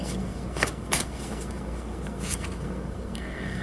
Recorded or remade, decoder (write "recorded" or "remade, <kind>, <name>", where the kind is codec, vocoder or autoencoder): remade, codec, SNAC